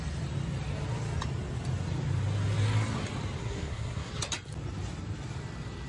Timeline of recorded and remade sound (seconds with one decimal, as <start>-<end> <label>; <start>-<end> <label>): 0.0-3.4 recorded; 3.4-4.1 remade; 4.1-5.9 recorded